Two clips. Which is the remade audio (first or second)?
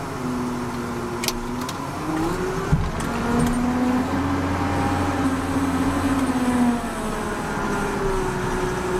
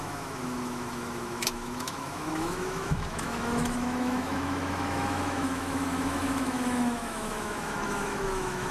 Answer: second